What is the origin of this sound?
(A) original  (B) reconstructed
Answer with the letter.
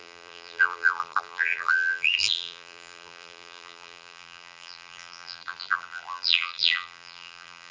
B